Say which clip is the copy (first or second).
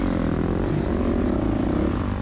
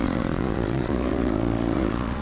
second